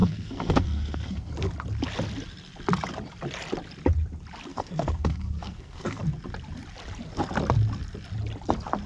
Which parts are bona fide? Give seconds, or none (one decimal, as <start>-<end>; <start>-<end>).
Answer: 1.3-4.5; 6.0-8.9

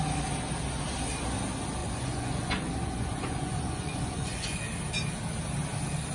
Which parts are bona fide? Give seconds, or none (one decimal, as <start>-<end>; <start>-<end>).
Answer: 0.0-1.8; 4.6-6.1

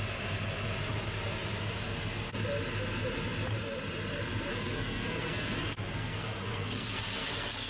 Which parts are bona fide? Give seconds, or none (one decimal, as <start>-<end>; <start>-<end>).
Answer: 0.0-4.5

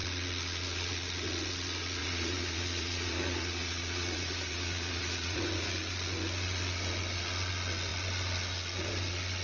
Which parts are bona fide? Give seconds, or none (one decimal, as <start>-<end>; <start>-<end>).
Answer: 0.0-2.0; 5.4-9.4